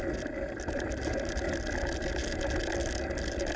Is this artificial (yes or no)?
no